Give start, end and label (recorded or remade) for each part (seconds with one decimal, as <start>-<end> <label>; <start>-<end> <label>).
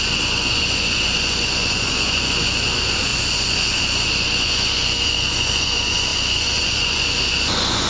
0.0-7.9 remade